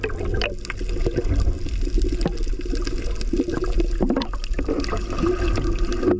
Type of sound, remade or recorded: recorded